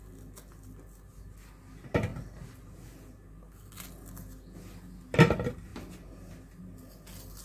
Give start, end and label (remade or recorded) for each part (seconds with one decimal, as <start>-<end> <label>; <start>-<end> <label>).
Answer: 0.0-7.4 recorded

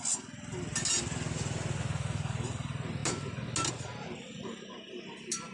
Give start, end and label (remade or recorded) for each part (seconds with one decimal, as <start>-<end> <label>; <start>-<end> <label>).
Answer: 0.0-5.5 recorded

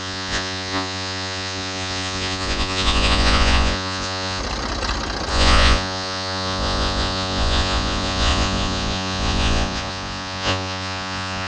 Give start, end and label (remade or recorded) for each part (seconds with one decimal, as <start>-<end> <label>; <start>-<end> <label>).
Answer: 0.0-4.4 remade; 4.4-5.3 recorded; 5.3-11.5 remade

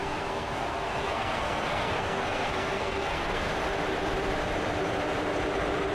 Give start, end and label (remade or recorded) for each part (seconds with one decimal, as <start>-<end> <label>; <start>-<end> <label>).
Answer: 0.0-3.5 remade; 3.5-5.9 recorded